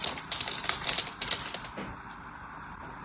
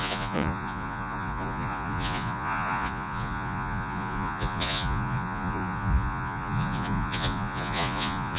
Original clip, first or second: first